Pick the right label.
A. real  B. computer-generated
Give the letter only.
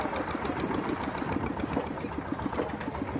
A